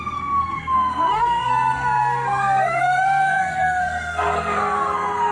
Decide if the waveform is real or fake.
fake